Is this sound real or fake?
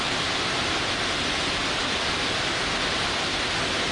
real